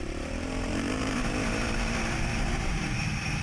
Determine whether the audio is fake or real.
fake